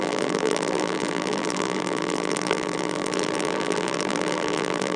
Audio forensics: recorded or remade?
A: remade